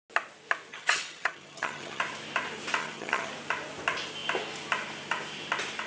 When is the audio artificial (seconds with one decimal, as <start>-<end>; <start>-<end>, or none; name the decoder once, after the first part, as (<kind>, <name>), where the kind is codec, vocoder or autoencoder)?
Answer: 0.7-2.0 (vocoder, HiFi-GAN); 2.8-3.3